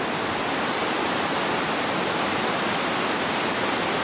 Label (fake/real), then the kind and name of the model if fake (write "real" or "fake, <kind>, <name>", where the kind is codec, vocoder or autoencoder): real